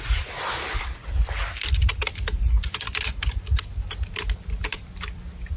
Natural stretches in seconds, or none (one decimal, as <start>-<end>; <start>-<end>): 0.0-5.6